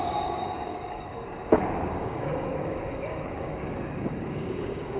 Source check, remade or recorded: remade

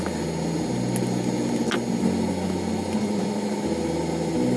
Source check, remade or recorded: recorded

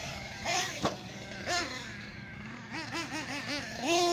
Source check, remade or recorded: remade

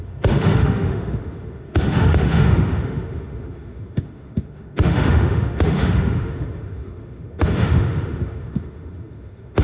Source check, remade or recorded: remade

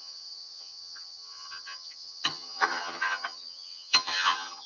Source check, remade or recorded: remade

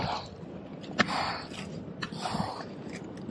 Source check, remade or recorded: recorded